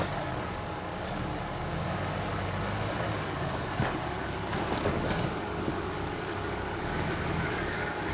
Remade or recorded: remade